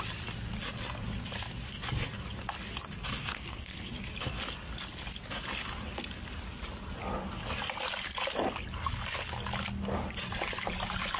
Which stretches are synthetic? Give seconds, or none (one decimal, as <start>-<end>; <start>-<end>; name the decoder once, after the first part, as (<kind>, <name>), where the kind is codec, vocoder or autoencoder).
3.2-3.9 (codec, SNAC)